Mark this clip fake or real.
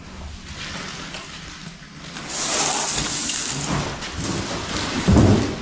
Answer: real